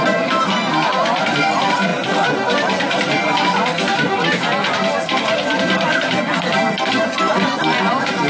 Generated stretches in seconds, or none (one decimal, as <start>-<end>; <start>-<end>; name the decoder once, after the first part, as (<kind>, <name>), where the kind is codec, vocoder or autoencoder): none